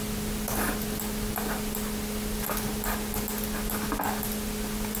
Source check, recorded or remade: recorded